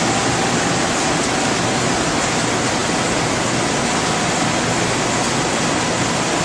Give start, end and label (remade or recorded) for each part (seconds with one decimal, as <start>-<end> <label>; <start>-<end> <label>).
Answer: 0.0-6.4 recorded